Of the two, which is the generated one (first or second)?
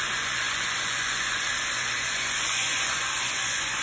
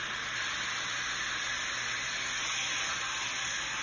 first